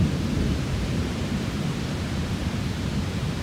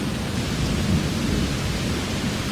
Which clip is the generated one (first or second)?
first